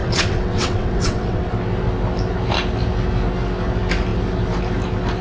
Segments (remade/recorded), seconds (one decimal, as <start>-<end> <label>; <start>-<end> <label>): 0.0-1.5 remade; 1.5-5.2 recorded